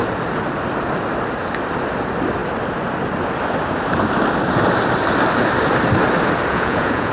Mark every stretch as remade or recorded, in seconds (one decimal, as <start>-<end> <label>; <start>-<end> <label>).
0.0-6.5 recorded; 6.5-7.1 remade